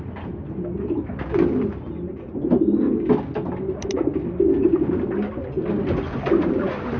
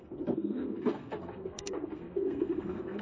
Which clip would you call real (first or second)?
first